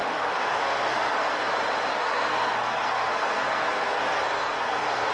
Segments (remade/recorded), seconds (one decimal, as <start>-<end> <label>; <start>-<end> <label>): 0.0-1.4 remade; 1.4-1.9 recorded; 1.9-5.1 remade